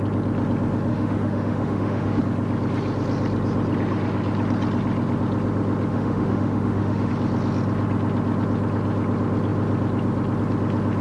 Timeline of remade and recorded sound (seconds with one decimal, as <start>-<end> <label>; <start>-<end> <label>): 0.0-0.9 recorded; 0.9-2.2 remade; 2.2-5.9 recorded; 5.9-7.1 remade; 7.1-11.0 recorded